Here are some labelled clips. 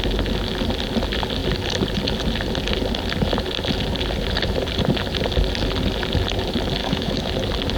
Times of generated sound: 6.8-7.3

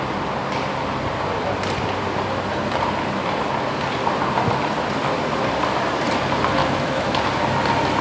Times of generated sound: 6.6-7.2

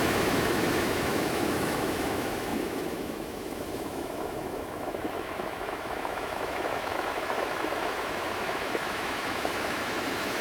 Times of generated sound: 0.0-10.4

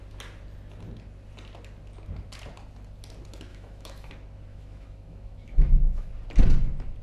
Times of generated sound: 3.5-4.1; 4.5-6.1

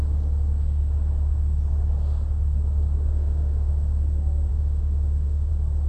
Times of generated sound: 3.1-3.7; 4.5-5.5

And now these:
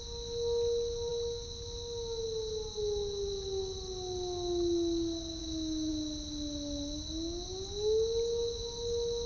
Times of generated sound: 5.4-5.9